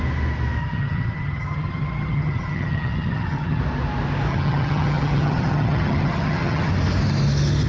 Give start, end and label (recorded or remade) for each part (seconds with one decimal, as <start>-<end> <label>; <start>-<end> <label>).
0.0-0.6 recorded; 0.6-3.6 remade; 3.6-4.3 recorded; 4.3-6.7 remade; 6.7-7.7 recorded